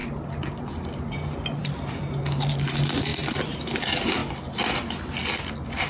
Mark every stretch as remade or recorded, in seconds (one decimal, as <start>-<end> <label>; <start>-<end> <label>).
0.0-5.9 recorded